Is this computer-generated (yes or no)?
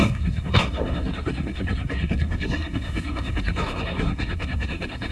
yes